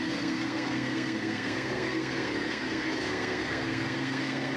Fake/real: fake